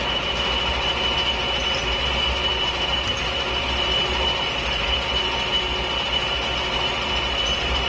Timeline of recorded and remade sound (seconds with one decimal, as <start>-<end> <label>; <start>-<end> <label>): 0.0-7.9 recorded